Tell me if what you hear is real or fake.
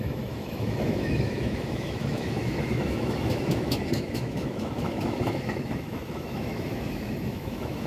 fake